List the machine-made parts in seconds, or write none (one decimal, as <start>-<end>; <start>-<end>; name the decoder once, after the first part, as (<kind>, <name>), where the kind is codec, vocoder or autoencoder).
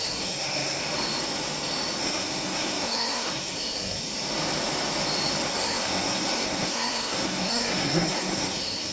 0.0-0.8 (codec, SNAC); 2.0-4.0; 5.5-8.9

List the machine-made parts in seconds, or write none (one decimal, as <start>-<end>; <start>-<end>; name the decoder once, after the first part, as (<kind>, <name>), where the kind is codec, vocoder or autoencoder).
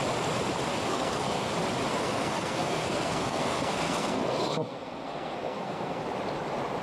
0.7-1.5 (codec, SNAC); 1.9-6.0